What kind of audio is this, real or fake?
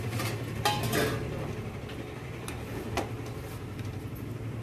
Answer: real